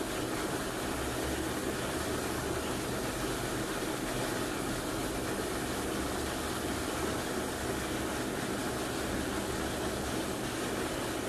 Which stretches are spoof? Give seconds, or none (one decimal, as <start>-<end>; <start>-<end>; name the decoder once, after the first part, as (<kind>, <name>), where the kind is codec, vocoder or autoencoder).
none